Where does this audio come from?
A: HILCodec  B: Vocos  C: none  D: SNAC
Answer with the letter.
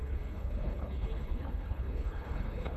A